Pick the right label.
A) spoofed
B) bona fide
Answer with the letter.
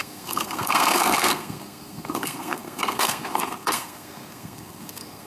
A